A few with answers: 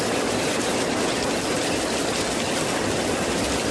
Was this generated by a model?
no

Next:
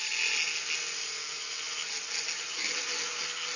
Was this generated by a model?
no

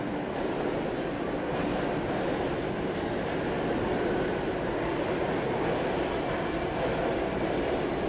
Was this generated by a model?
no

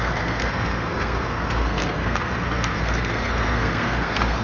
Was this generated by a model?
yes